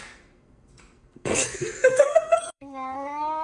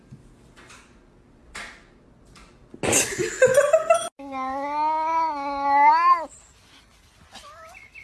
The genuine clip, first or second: second